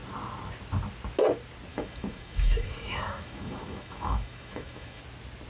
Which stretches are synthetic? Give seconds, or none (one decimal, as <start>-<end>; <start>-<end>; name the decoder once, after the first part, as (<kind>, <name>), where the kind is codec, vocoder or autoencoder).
1.7-5.0 (autoencoder, DAC-VAE)